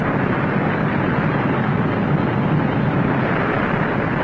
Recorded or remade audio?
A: recorded